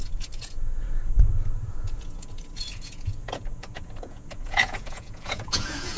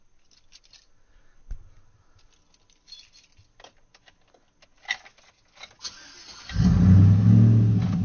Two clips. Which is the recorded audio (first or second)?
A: second